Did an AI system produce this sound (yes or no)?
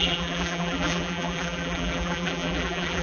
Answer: yes